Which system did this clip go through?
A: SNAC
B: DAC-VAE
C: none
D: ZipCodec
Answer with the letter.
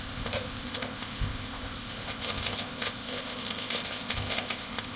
D